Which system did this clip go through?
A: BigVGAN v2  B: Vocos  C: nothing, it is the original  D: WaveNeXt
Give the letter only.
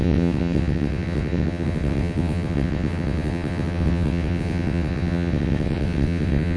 D